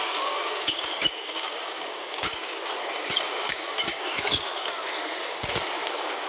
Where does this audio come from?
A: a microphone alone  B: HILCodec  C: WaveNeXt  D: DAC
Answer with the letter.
D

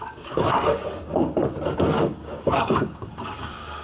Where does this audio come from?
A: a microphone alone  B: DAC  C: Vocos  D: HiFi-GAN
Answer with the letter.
B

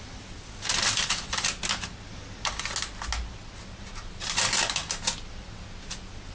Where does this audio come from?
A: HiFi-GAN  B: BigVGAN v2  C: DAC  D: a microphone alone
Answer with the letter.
D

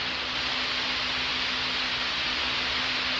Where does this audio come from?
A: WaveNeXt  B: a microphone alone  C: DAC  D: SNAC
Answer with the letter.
B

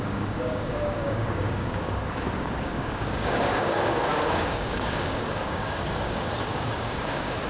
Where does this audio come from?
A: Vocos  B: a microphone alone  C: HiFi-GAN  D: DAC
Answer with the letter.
D